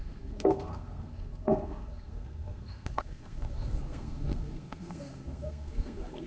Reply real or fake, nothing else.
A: fake